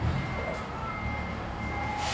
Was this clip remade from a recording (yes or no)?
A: no